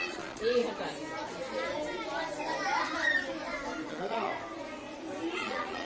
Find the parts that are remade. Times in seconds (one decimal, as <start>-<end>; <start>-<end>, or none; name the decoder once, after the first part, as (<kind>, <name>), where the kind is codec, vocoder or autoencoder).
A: 0.0-0.6 (vocoder, Vocos); 3.9-4.3; 5.3-5.9